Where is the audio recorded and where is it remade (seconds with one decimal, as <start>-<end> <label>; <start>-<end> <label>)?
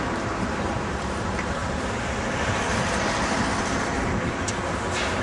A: 0.0-1.6 remade; 1.6-4.7 recorded; 4.7-5.2 remade